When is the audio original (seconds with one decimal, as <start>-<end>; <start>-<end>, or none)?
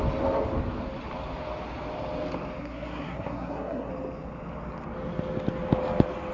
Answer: 0.0-2.6; 3.9-6.3